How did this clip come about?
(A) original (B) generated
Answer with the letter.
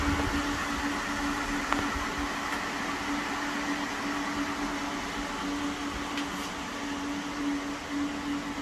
A